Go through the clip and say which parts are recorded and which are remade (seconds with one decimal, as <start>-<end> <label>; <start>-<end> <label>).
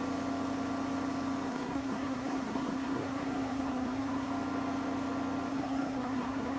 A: 0.0-1.5 recorded; 1.5-4.3 remade; 4.3-5.5 recorded; 5.5-6.6 remade